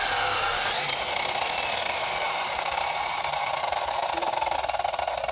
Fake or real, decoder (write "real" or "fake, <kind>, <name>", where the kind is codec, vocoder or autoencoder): real